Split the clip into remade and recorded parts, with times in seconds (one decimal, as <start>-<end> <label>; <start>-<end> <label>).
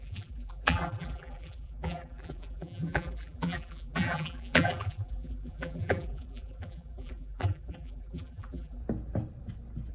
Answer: 0.0-8.8 remade; 8.8-9.9 recorded